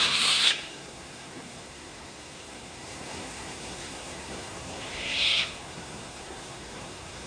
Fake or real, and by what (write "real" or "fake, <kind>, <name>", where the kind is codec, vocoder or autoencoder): fake, codec, SNAC